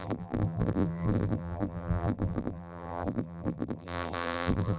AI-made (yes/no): yes